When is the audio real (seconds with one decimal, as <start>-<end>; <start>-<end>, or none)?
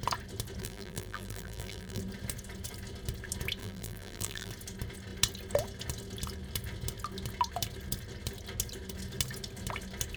0.0-0.6; 2.0-3.6; 4.5-10.2